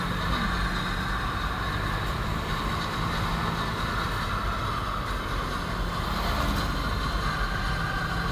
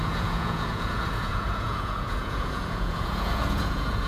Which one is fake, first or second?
second